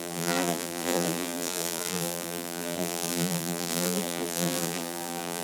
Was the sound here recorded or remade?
remade